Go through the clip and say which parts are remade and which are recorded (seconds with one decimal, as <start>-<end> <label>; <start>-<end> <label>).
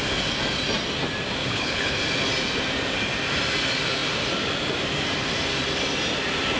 0.0-1.4 recorded; 1.4-2.0 remade; 2.0-6.6 recorded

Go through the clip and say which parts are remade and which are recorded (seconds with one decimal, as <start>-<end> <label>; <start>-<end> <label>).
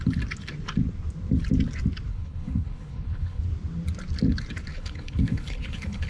0.0-2.1 recorded; 2.1-3.4 remade; 3.4-4.7 recorded; 4.7-6.1 remade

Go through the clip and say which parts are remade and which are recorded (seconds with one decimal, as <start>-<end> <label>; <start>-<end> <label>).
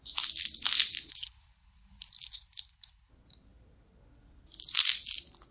0.0-1.1 recorded; 1.1-3.1 remade; 3.1-5.5 recorded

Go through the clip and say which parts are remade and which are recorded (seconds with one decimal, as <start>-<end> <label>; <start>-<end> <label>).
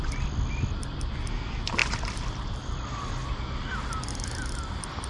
0.0-5.1 recorded